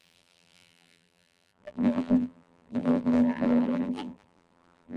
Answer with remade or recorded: remade